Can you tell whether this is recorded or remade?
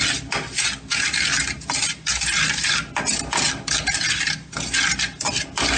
recorded